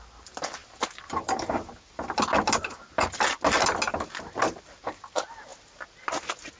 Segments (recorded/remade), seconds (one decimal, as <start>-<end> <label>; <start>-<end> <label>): 0.0-6.6 recorded